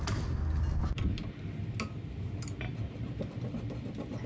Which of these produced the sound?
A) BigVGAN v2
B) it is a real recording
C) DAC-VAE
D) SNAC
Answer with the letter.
B